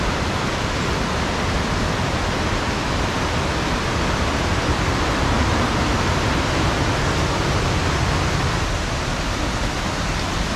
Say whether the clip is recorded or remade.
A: recorded